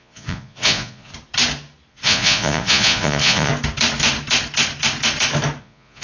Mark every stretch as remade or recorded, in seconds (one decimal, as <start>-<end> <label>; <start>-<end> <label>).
0.0-1.1 remade; 1.1-1.9 recorded; 1.9-3.5 remade; 3.5-5.6 recorded; 5.6-6.0 remade